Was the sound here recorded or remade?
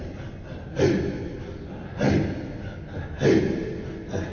recorded